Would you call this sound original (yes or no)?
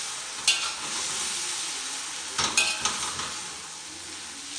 yes